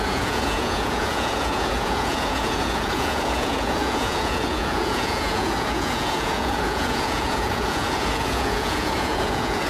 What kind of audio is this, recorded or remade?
remade